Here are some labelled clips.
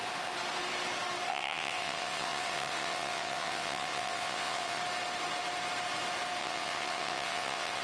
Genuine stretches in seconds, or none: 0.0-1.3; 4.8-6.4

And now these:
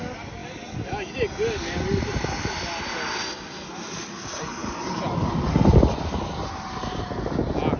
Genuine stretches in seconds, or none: 0.0-7.8